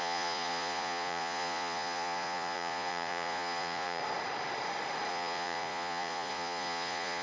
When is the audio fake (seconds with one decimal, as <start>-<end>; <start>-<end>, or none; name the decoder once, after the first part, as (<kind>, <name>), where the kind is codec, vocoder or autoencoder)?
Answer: 0.0-4.0 (vocoder, Vocos); 5.1-7.2